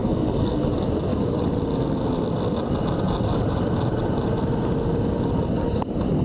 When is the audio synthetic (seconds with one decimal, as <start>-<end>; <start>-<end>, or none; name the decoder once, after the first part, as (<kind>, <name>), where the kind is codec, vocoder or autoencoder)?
0.0-0.7 (codec, SNAC)